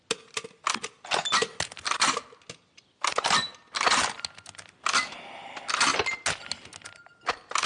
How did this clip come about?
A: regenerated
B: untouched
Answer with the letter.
B